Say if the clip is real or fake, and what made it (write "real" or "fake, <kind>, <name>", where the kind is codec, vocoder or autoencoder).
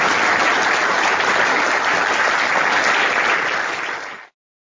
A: real